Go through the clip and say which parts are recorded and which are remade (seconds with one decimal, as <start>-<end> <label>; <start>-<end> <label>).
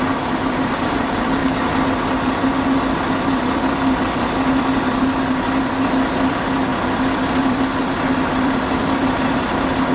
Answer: 0.0-1.4 remade; 1.4-3.1 recorded; 3.1-9.9 remade